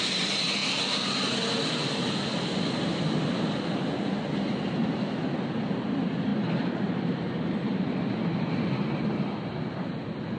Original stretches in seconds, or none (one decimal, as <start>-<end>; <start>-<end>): 0.0-10.4